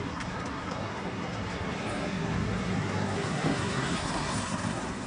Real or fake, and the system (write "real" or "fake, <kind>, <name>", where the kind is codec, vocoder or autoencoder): fake, codec, SNAC